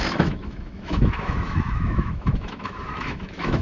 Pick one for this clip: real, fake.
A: fake